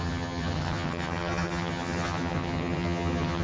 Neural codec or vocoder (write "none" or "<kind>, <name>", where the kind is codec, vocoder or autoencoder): vocoder, HiFi-GAN